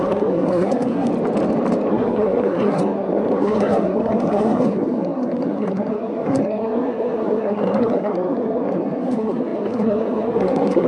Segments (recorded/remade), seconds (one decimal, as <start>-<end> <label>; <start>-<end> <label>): 0.0-1.1 remade; 1.1-1.9 recorded; 1.9-10.9 remade